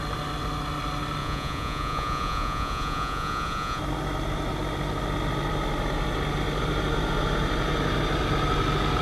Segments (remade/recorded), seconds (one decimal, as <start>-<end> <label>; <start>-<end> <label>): 0.0-1.2 recorded; 1.2-3.8 remade; 3.8-9.0 recorded